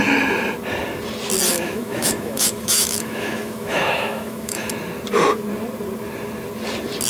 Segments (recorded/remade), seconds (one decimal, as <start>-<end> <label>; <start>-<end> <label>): 0.0-1.5 recorded; 1.5-4.7 remade; 4.7-7.1 recorded